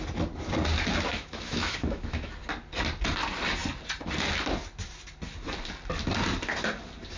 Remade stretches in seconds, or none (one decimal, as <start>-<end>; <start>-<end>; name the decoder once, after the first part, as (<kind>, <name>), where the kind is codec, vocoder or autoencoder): 1.1-2.3 (autoencoder, DAC-VAE)